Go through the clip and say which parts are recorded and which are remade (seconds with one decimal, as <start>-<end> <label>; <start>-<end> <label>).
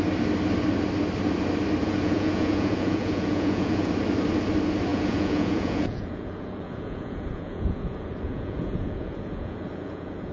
0.0-1.8 recorded; 1.8-3.9 remade; 3.9-4.9 recorded; 4.9-10.3 remade